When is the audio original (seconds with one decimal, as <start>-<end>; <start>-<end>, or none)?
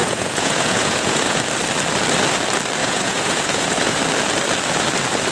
1.4-2.8; 4.0-5.3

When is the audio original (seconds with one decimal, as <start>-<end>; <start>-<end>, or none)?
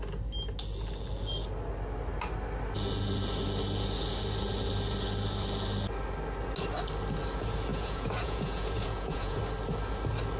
0.0-7.7; 9.4-10.4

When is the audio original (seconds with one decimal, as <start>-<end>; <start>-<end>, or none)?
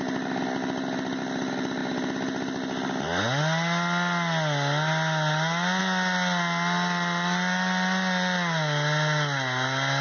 0.0-10.0